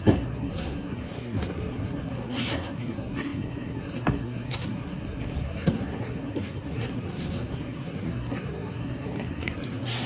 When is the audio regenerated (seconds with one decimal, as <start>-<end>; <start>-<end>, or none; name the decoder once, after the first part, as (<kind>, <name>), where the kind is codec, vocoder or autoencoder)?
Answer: 0.0-10.1 (codec, SNAC)